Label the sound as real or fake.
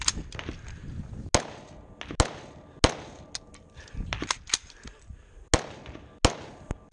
real